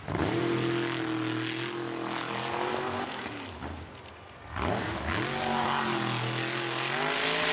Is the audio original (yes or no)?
yes